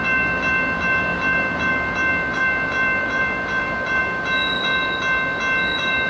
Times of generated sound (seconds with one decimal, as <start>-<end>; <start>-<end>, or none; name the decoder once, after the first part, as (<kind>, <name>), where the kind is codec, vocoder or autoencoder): 0.0-4.0 (vocoder, BigVGAN v2)